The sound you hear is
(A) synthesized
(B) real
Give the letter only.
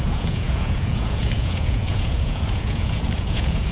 A